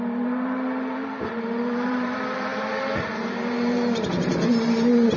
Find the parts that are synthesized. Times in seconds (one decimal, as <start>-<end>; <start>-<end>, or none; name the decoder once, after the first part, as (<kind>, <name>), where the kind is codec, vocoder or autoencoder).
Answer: 0.0-5.2 (vocoder, BigVGAN v2)